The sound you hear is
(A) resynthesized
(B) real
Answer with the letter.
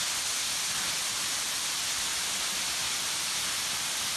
B